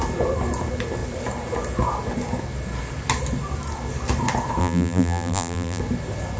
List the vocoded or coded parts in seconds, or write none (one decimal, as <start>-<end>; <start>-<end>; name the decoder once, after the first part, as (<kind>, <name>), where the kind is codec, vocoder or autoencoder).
4.6-5.8 (vocoder, BigVGAN v2)